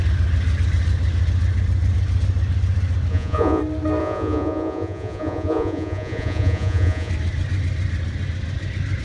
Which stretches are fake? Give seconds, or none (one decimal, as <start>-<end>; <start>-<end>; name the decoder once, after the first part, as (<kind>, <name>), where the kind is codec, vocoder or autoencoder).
3.1-3.6 (vocoder, Vocos); 4.0-7.1